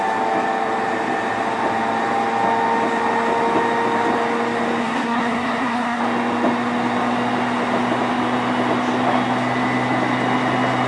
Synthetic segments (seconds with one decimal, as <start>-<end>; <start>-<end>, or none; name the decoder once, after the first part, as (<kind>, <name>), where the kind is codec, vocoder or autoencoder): 4.8-6.0 (codec, SNAC)